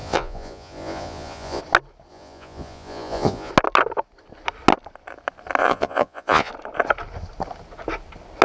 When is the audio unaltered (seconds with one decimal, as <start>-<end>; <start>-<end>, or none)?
1.6-2.1; 3.5-5.6; 6.5-8.4